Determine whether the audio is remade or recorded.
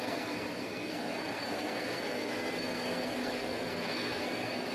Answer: remade